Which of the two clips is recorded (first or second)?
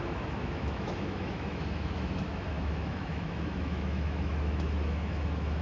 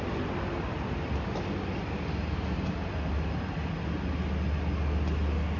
second